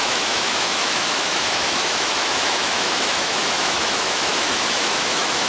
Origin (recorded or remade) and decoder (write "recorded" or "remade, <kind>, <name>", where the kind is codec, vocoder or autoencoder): remade, autoencoder, DAC-VAE